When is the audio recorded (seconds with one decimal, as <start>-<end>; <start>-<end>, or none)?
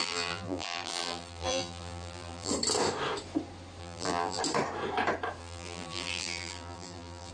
2.5-3.8; 4.4-5.4